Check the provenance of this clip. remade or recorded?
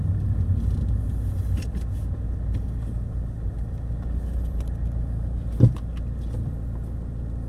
recorded